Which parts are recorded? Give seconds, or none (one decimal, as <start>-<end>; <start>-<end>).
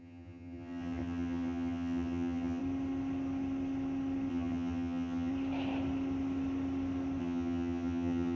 2.6-4.3; 5.3-7.2